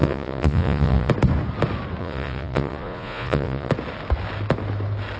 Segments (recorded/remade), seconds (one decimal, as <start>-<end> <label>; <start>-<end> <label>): 0.0-1.1 remade; 1.1-2.0 recorded; 2.0-3.7 remade; 3.7-5.2 recorded